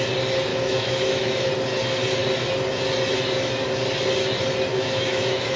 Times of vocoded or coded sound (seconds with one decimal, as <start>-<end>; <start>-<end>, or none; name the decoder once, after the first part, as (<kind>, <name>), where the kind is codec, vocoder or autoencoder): 0.5-1.5 (autoencoder, DAC-VAE); 4.7-5.6